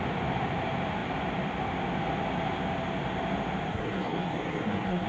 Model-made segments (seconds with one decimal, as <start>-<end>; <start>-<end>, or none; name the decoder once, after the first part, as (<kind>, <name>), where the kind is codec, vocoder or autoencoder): 3.7-5.1 (codec, SNAC)